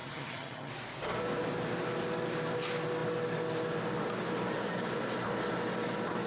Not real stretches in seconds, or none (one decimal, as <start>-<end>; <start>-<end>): 0.0-0.7